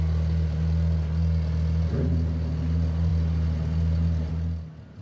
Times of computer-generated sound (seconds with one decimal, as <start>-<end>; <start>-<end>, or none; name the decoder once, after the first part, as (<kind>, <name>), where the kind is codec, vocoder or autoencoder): none